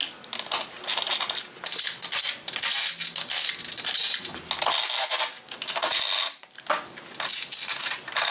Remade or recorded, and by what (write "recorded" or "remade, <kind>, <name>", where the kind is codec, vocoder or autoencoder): recorded